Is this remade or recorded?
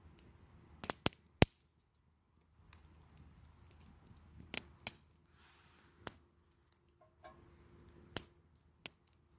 recorded